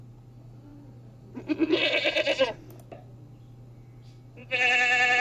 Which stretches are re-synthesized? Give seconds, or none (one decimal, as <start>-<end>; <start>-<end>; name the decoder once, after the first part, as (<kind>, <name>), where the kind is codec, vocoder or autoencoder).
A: none